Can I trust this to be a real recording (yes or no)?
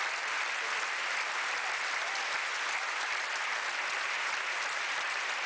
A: yes